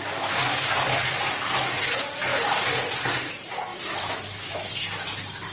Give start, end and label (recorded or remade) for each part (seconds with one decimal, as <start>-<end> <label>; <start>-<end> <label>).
0.0-3.7 recorded; 3.7-4.7 remade; 4.7-5.5 recorded